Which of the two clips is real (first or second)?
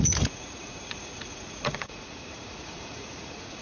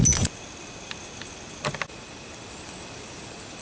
second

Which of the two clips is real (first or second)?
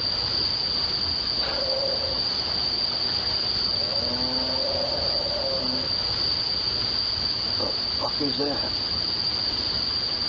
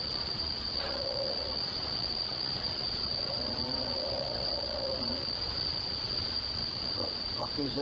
first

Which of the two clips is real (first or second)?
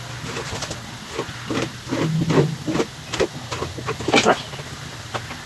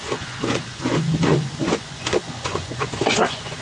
first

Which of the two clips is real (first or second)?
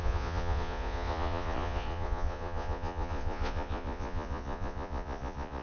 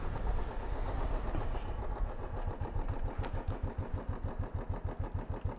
second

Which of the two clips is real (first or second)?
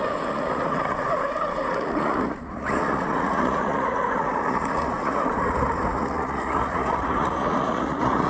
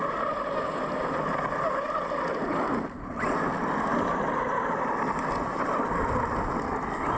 second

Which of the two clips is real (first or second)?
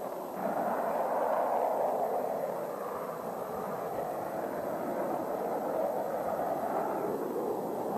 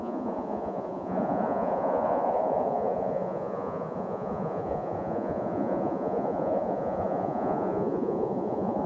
first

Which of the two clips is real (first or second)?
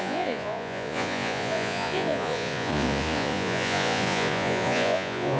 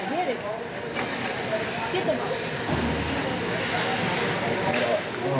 second